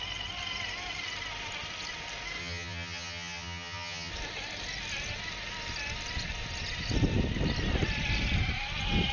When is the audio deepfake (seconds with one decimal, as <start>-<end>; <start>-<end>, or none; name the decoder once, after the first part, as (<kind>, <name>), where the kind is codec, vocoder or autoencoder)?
2.4-4.1 (vocoder, HiFi-GAN)